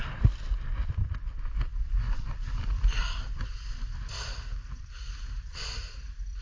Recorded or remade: recorded